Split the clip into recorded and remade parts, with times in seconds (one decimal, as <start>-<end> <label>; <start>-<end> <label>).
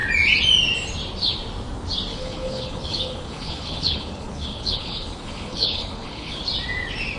0.0-2.1 recorded; 2.1-6.4 remade; 6.4-7.2 recorded